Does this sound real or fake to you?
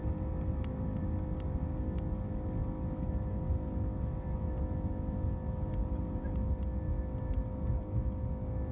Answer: real